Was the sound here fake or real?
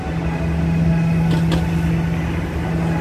real